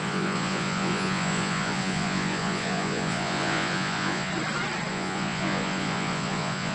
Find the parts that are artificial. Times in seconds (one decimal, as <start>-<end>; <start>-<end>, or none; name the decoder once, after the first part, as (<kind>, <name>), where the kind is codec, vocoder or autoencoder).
0.0-4.3 (vocoder, Vocos); 4.9-6.7